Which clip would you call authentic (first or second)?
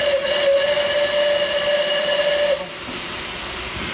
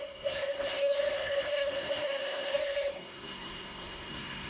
first